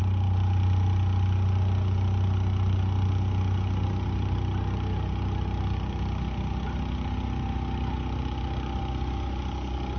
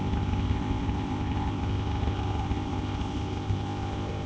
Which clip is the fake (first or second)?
second